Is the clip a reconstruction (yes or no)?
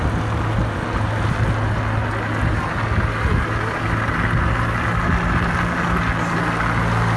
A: no